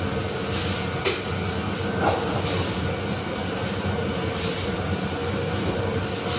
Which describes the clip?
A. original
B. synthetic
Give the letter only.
A